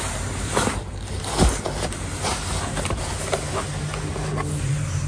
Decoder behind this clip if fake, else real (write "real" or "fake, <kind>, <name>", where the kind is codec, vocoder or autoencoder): real